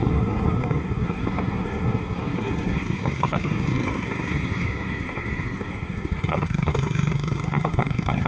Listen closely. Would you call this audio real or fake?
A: fake